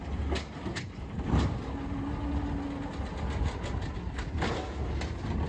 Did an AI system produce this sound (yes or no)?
no